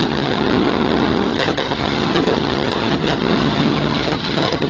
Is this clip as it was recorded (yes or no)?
no